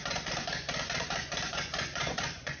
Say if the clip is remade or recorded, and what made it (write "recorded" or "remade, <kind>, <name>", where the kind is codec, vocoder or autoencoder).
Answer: remade, vocoder, Vocos